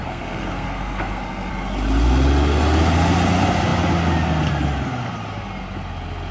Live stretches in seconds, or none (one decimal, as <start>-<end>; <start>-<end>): 1.5-6.3